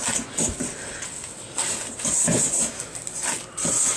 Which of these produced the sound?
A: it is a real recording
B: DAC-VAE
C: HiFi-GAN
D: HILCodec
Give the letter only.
A